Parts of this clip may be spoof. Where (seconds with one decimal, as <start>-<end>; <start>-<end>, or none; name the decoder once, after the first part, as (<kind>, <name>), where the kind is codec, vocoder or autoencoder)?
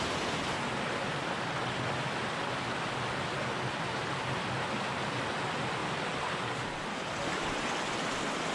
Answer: none